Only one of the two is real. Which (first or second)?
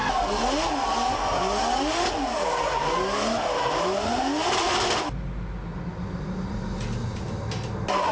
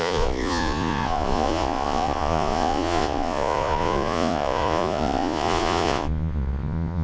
first